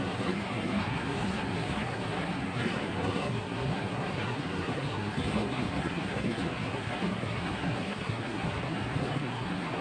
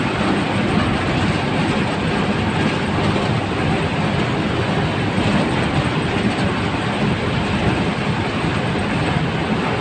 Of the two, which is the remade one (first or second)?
first